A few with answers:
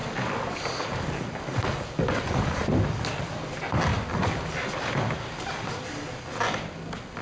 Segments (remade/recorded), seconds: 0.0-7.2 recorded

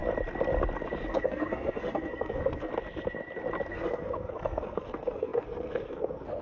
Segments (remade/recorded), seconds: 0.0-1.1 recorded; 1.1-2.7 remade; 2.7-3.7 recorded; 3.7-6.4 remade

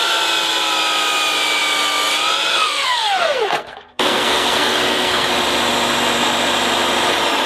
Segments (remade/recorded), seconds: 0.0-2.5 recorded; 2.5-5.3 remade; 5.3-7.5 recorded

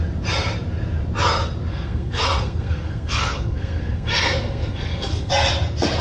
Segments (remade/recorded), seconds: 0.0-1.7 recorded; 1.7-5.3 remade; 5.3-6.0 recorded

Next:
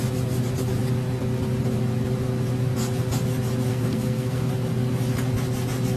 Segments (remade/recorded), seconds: 0.0-3.7 recorded; 3.7-4.5 remade; 4.5-6.0 recorded